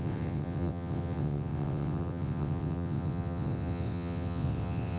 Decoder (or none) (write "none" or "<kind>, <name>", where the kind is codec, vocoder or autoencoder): vocoder, WaveNeXt